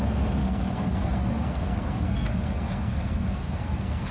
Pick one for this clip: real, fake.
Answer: fake